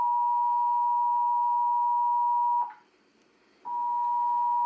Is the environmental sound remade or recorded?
recorded